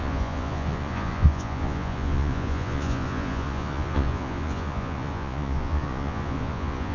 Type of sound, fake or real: fake